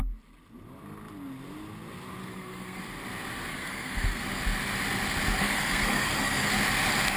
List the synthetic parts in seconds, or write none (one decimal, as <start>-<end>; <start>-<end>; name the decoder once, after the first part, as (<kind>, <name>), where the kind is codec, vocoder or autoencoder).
2.2-2.8 (codec, SNAC); 3.5-4.2; 5.4-6.5